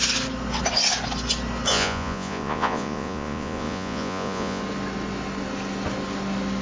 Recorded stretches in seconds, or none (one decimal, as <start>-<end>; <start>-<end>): 0.0-1.7; 4.6-6.6